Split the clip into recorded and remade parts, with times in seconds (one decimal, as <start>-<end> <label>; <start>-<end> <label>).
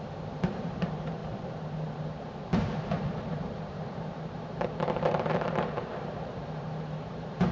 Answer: 0.0-7.5 remade